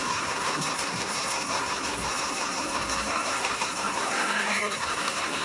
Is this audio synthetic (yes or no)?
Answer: yes